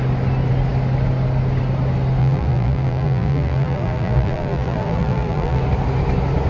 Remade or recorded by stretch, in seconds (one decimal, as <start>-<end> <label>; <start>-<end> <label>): 0.0-2.2 recorded; 2.2-5.6 remade; 5.6-6.5 recorded